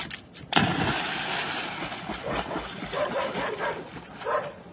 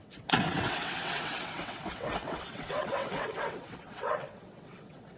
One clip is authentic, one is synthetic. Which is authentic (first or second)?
first